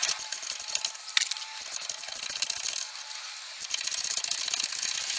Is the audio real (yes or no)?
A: yes